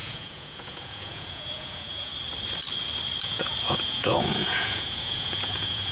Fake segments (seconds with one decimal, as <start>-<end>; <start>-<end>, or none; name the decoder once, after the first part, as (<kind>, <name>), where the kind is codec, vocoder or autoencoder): 0.0-2.1 (vocoder, Vocos); 3.2-5.9